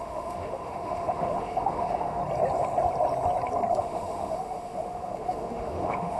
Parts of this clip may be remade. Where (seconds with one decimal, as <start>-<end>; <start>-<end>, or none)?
0.0-2.2; 3.8-6.2